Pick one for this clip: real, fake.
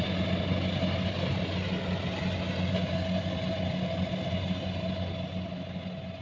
real